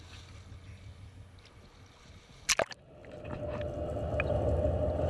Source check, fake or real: real